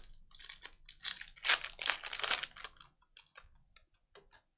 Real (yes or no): yes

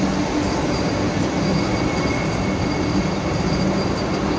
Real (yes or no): yes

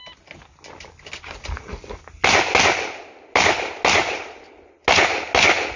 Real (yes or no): yes